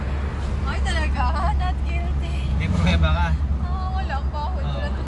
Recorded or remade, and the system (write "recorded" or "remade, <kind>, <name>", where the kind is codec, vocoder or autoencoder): recorded